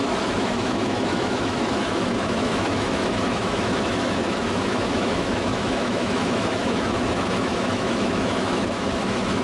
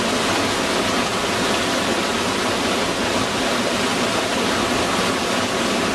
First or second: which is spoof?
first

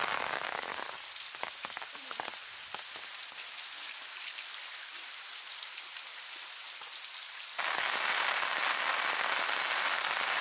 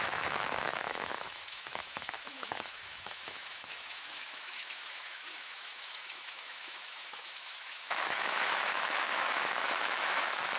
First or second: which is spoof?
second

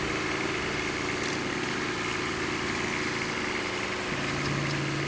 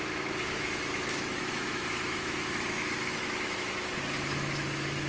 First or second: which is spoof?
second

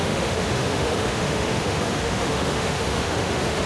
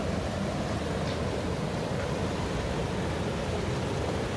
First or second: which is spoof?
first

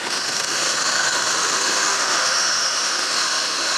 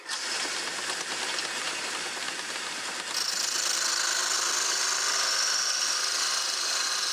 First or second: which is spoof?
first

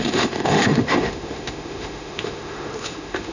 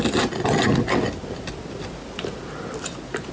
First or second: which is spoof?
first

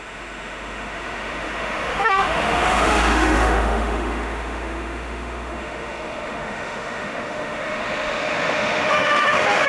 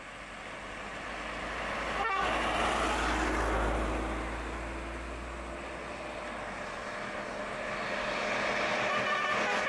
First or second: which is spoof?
first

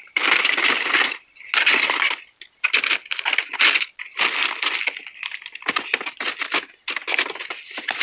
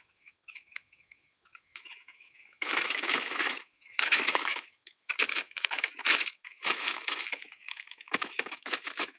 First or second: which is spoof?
second